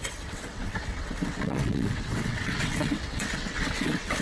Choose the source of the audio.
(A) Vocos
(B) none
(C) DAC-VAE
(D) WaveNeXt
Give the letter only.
D